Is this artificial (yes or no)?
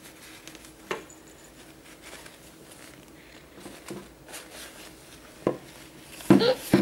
no